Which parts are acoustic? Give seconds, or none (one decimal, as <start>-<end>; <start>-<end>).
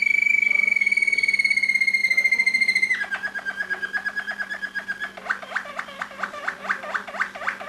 0.0-2.0; 6.6-7.7